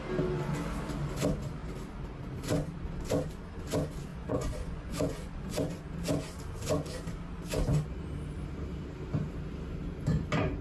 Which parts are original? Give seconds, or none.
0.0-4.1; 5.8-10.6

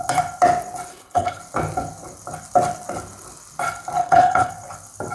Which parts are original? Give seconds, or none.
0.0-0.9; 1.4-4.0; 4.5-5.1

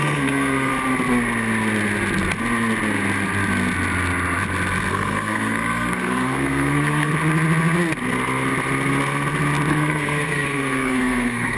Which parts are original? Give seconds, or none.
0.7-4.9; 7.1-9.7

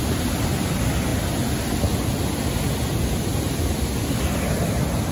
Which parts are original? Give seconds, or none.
0.0-5.1